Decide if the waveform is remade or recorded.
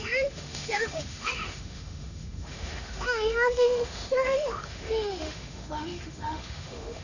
remade